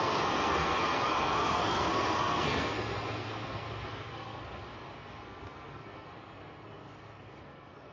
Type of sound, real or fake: fake